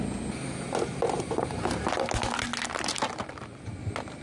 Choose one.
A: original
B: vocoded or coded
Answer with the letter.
A